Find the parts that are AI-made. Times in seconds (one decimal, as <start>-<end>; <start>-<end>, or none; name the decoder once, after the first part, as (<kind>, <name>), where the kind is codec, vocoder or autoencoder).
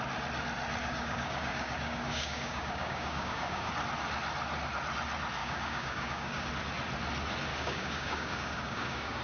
0.8-3.7 (codec, DAC); 5.4-6.5; 7.5-9.2